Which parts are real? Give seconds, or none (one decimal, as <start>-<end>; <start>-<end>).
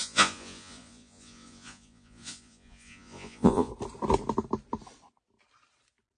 3.7-6.2